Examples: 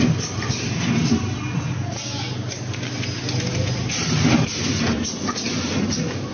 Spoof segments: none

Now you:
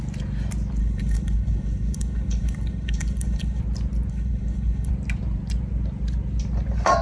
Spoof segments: 0.8-3.6 (codec, HILCodec); 4.1-4.9